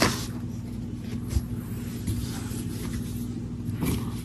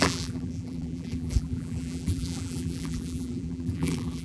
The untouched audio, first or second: first